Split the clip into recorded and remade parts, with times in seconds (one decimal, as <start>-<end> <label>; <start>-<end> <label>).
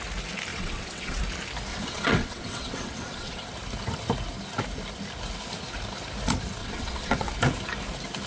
0.0-0.5 recorded; 0.5-1.2 remade; 1.2-1.7 recorded; 1.7-3.5 remade; 3.5-6.6 recorded; 6.6-7.3 remade; 7.3-8.3 recorded